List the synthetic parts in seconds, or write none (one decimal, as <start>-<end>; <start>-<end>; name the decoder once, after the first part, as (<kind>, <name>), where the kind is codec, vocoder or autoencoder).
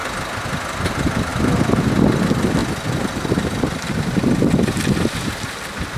none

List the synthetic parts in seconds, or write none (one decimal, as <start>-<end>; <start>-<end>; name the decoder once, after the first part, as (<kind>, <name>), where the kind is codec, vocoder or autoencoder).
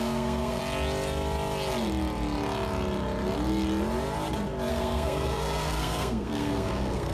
0.0-0.6 (codec, SNAC); 4.7-7.1